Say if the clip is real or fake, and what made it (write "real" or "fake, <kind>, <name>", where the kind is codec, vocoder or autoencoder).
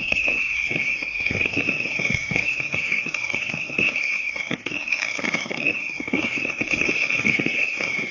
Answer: fake, codec, SNAC